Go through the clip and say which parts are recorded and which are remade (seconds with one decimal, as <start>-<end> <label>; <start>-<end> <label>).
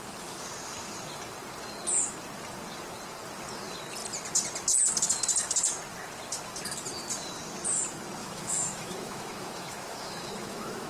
0.0-8.2 recorded; 8.2-10.9 remade